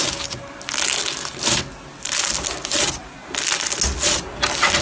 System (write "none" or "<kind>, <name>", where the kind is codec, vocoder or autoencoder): none